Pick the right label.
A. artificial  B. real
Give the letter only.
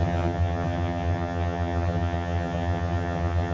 A